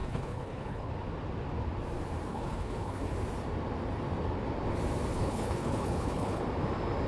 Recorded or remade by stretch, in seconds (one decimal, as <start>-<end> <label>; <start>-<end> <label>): 0.0-0.9 remade; 0.9-2.3 recorded; 2.3-3.1 remade; 3.1-5.1 recorded; 5.1-6.4 remade; 6.4-7.1 recorded